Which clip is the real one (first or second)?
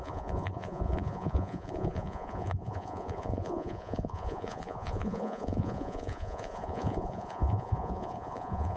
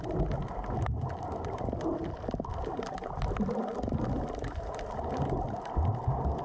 second